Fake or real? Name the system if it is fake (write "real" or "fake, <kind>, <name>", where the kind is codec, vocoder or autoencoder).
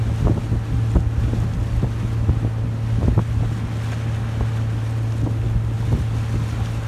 real